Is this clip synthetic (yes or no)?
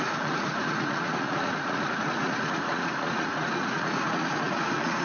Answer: yes